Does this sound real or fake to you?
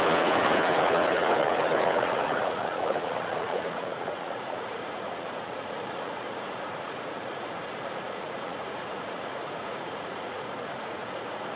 fake